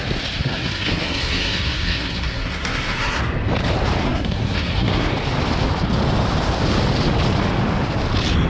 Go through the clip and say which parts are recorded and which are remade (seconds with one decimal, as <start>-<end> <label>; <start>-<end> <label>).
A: 0.0-0.4 recorded; 0.4-3.2 remade; 3.2-4.0 recorded; 4.0-5.1 remade; 5.1-8.5 recorded